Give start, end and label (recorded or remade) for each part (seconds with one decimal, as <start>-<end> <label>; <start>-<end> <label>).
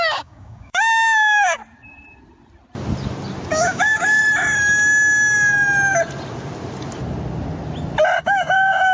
0.0-1.6 remade; 1.6-3.5 recorded; 3.5-4.2 remade; 4.2-8.2 recorded; 8.2-8.9 remade